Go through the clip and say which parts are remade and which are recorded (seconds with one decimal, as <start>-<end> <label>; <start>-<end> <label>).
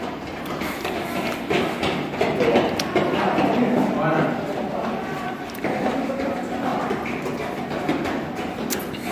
0.0-9.1 recorded